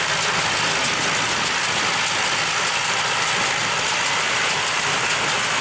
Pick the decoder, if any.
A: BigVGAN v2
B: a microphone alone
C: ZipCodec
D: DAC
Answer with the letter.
B